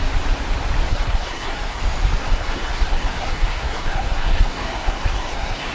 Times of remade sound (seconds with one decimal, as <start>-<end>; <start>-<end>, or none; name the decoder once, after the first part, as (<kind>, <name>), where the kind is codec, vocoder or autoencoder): 0.9-1.8 (codec, SNAC); 2.2-5.7